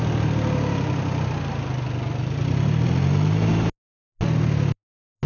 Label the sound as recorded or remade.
recorded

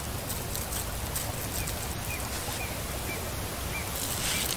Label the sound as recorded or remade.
recorded